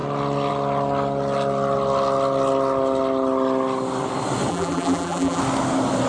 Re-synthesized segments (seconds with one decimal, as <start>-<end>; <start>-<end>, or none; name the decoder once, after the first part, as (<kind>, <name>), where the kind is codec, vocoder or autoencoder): 4.5-5.4 (vocoder, BigVGAN v2)